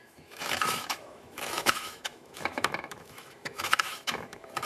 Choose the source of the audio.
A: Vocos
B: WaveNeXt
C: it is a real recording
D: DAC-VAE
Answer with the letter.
D